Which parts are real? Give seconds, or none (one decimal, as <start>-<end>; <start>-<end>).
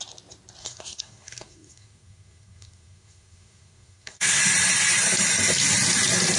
0.0-0.6; 4.4-6.4